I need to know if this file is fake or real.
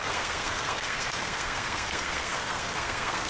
fake